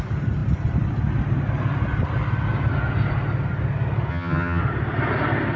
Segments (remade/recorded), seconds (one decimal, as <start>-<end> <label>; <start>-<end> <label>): 0.0-4.1 recorded; 4.1-4.6 remade; 4.6-5.6 recorded